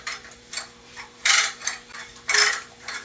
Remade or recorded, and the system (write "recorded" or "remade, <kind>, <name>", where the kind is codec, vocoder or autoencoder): remade, vocoder, BigVGAN v2